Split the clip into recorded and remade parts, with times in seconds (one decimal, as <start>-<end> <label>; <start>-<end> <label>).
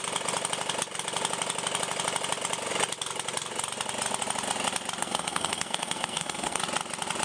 0.0-5.0 recorded; 5.0-6.6 remade; 6.6-7.2 recorded